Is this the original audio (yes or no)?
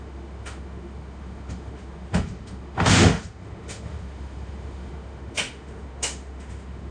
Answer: no